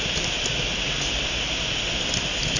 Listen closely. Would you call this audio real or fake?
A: real